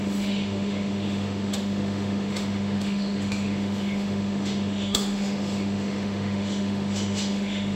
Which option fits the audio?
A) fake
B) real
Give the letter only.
A